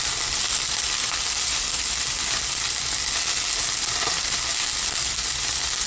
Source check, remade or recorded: recorded